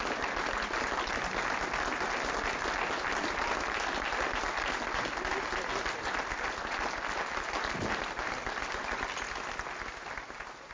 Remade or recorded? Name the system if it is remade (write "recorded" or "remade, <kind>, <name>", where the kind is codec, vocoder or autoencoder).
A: recorded